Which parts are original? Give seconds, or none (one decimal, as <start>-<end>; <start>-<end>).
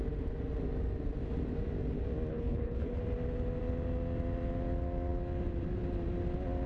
0.0-2.3; 3.0-6.7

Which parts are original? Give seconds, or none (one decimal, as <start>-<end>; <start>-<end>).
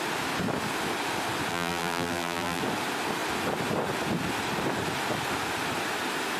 0.0-1.5; 2.6-6.4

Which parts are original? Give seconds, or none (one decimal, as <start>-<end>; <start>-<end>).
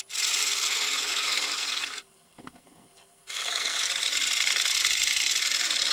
0.0-0.4; 3.9-5.9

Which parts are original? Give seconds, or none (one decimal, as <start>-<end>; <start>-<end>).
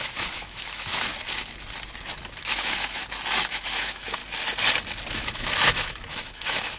1.1-2.4; 3.0-3.5; 4.2-5.1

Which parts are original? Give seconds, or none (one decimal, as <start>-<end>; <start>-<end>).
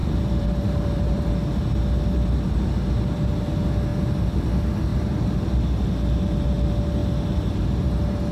1.3-7.0; 7.7-8.3